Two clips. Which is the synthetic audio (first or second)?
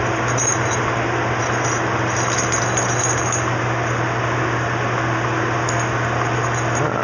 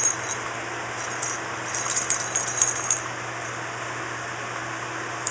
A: second